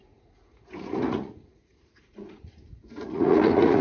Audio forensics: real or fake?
fake